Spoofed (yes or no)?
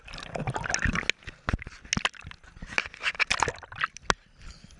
no